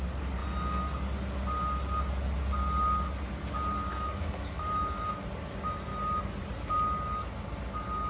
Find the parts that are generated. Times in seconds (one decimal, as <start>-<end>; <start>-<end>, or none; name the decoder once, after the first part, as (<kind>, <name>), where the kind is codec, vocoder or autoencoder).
3.9-5.1 (autoencoder, DAC-VAE)